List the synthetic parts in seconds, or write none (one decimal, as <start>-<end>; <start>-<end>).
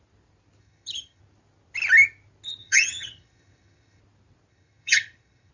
0.6-1.2; 2.6-4.0; 4.5-5.5